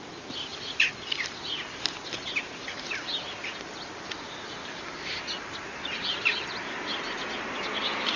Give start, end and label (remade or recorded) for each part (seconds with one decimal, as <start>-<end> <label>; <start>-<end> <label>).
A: 0.0-4.6 recorded; 4.6-5.2 remade; 5.2-8.2 recorded